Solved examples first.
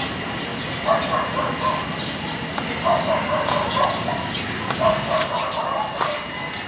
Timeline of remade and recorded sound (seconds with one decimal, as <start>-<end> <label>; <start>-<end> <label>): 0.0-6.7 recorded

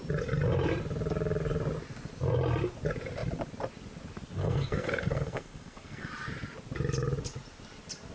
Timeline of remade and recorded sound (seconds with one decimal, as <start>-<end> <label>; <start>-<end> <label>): 0.0-4.4 recorded; 4.4-6.1 remade; 6.1-8.1 recorded

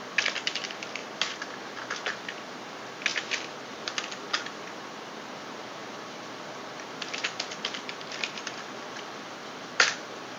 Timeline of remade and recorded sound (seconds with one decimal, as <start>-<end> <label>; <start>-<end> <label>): 0.0-1.0 recorded; 1.0-1.5 remade; 1.5-5.8 recorded; 5.8-10.4 remade

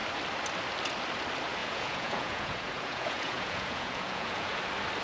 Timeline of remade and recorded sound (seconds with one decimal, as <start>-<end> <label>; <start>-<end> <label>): 0.0-1.6 recorded; 1.6-4.6 remade; 4.6-5.0 recorded

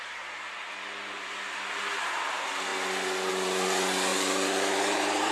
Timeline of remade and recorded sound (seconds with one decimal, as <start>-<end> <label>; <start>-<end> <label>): 0.0-4.1 recorded; 4.1-5.3 remade

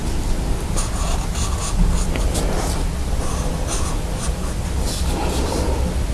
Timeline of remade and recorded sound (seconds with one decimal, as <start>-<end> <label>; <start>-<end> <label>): 0.0-6.1 recorded

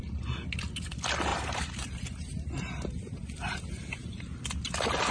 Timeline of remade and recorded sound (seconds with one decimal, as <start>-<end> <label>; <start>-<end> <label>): 0.0-1.3 recorded; 1.3-4.4 remade; 4.4-5.1 recorded